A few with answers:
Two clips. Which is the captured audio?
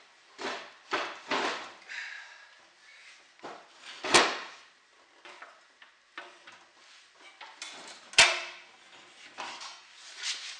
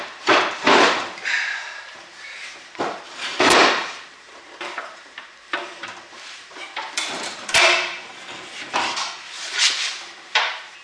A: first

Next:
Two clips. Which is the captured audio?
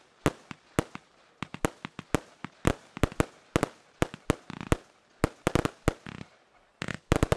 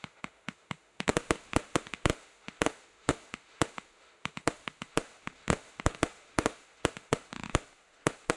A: first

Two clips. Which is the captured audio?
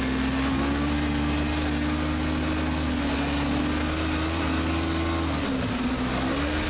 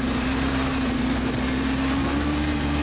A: first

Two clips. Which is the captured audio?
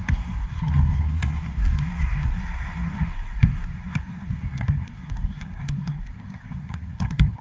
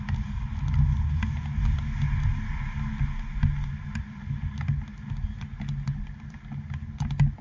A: second